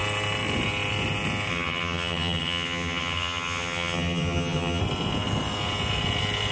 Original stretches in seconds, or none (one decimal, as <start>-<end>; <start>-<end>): 0.0-1.5; 4.8-6.5